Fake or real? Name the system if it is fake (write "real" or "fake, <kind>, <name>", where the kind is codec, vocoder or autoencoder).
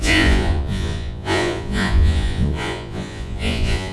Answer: fake, vocoder, Vocos